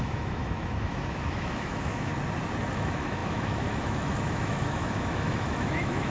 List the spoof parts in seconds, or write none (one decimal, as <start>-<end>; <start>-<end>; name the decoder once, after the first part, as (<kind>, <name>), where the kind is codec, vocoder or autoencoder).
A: 0.0-2.1 (autoencoder, DAC-VAE); 2.7-6.1